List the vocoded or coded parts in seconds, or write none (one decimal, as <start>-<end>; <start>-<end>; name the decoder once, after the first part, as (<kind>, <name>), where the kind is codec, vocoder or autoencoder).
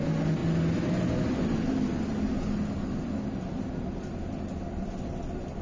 none